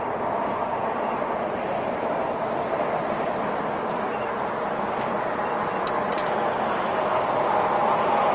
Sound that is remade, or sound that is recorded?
remade